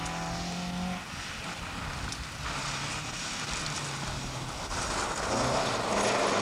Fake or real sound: real